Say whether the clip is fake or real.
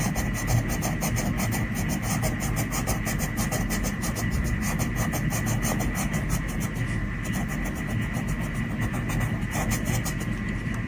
real